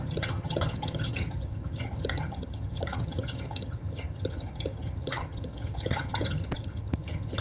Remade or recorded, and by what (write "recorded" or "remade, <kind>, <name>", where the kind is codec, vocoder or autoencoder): remade, vocoder, HiFi-GAN